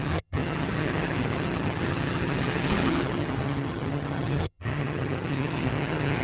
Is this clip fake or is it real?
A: fake